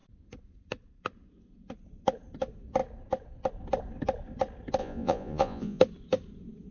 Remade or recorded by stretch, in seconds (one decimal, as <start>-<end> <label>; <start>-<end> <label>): 0.0-4.8 recorded; 4.8-5.8 remade; 5.8-6.7 recorded